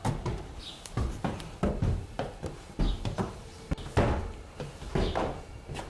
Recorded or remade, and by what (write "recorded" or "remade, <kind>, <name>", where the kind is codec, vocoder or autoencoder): recorded